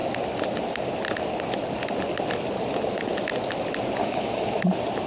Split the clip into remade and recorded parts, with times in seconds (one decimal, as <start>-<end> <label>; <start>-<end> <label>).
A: 0.0-4.0 recorded; 4.0-4.6 remade; 4.6-5.1 recorded